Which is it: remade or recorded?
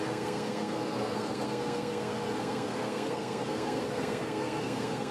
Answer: remade